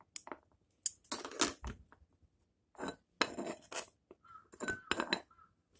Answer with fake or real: real